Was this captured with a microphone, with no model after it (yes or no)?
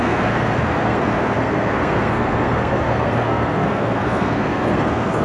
no